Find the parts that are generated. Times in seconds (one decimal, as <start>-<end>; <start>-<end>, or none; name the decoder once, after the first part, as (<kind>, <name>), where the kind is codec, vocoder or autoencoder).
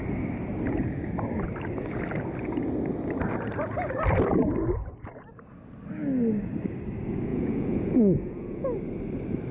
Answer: 7.3-8.8 (vocoder, Vocos)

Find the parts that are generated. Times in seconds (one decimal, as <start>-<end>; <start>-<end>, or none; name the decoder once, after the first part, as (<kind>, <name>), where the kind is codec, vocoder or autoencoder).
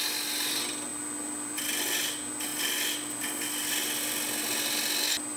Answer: none